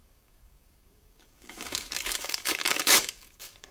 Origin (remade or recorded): remade